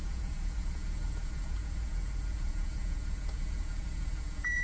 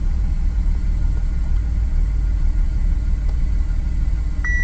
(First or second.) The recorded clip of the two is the second